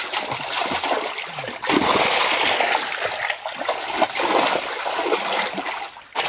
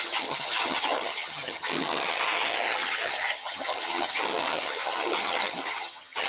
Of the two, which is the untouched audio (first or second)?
first